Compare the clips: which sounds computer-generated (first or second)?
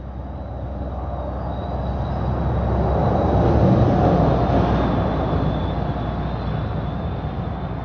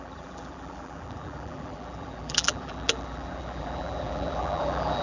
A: second